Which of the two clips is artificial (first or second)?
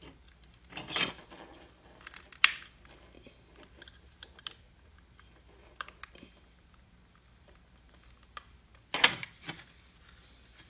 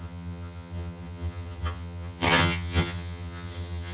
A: second